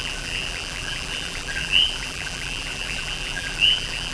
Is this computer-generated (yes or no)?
yes